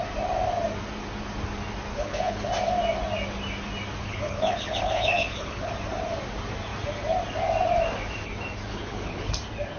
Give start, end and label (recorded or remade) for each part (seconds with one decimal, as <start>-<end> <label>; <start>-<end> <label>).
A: 0.0-1.9 recorded; 1.9-2.5 remade; 2.5-4.0 recorded; 4.0-5.7 remade; 5.7-8.7 recorded; 8.7-9.3 remade; 9.3-9.8 recorded